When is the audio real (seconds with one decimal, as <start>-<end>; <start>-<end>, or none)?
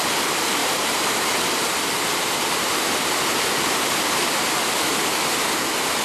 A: 0.0-0.6; 1.3-2.1; 4.2-6.0